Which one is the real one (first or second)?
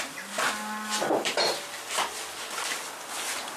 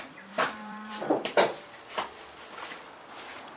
first